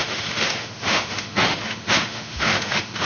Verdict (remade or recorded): remade